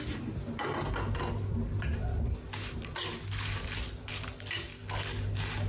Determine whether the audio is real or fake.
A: real